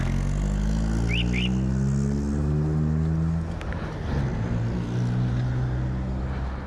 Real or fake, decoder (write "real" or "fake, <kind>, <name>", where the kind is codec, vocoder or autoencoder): real